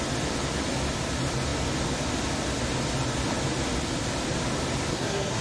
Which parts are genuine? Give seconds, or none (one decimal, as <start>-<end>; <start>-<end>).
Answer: 0.0-4.9